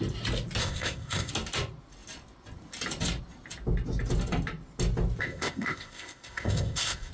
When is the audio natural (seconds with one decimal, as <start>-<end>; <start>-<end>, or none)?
0.0-0.6; 1.3-5.2

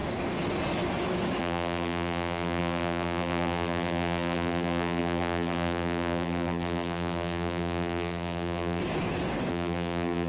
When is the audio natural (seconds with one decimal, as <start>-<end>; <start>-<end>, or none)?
0.0-1.4; 8.8-9.5

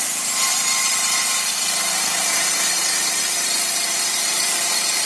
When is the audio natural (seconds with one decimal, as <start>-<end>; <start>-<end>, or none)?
none

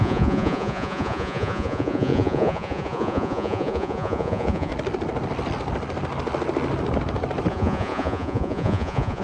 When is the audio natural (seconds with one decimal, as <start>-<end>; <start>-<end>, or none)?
4.7-7.5

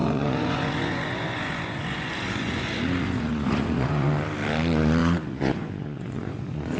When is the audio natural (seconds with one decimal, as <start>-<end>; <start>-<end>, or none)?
4.1-5.0

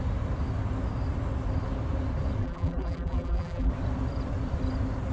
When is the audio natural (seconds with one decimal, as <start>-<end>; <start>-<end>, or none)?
0.0-2.4; 3.7-5.1

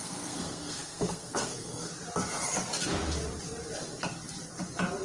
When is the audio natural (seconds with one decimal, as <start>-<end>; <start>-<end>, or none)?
1.9-5.0